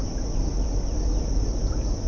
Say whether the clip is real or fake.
real